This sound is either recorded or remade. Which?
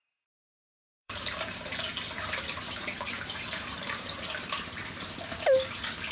remade